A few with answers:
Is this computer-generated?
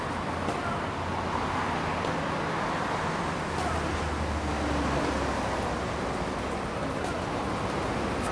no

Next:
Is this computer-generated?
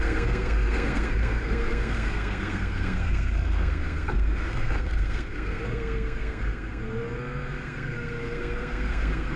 yes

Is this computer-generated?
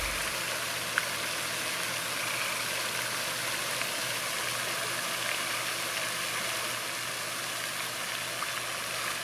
no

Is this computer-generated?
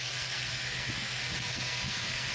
yes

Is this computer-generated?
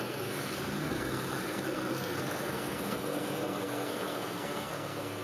yes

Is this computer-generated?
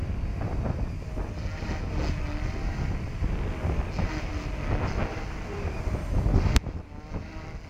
no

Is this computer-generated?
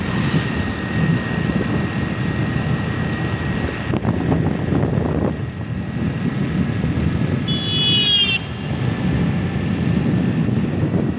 no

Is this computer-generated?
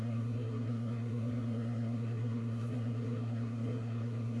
yes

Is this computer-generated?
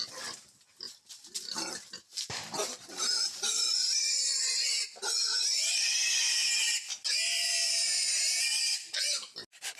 no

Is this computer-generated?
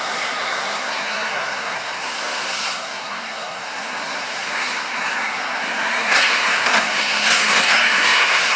yes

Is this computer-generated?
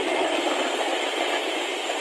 no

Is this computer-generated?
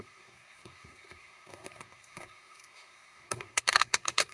yes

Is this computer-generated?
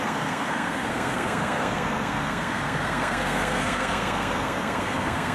yes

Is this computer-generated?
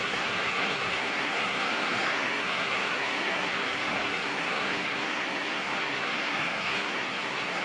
yes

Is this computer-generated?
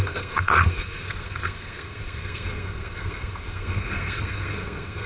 yes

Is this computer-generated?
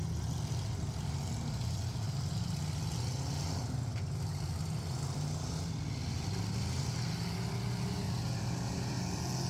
no